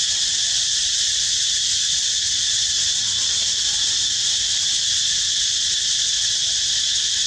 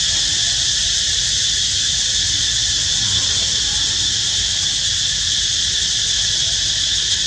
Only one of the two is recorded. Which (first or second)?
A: second